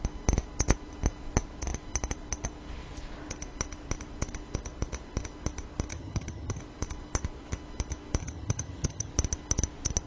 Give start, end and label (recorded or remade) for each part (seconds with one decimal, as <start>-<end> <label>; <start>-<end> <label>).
0.0-5.9 recorded; 5.9-6.6 remade; 6.6-8.2 recorded; 8.2-9.1 remade; 9.1-10.1 recorded